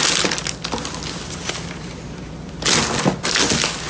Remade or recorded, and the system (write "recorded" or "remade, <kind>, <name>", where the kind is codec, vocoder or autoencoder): recorded